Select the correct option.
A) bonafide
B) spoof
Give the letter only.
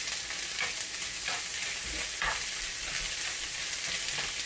A